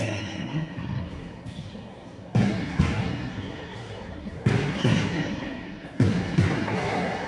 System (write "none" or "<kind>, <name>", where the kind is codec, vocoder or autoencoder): codec, SNAC